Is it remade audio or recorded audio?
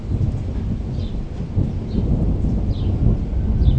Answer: recorded